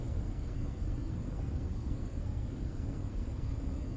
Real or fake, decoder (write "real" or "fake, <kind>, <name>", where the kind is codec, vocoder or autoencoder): fake, codec, SNAC